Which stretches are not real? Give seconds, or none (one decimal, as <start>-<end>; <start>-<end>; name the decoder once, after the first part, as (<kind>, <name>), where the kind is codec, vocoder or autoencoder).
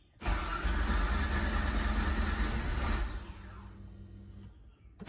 none